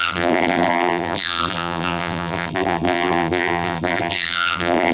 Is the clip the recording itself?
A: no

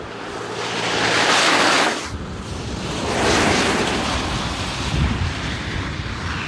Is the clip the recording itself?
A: no